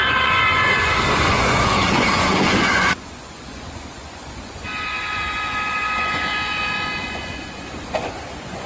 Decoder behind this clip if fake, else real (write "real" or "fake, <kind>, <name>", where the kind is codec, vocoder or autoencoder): fake, vocoder, Vocos